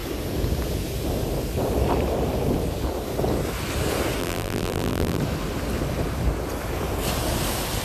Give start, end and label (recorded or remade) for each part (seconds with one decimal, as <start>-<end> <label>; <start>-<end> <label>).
0.0-4.2 recorded; 4.2-5.2 remade; 5.2-7.8 recorded